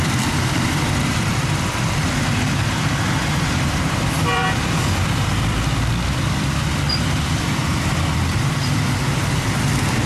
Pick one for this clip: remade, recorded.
remade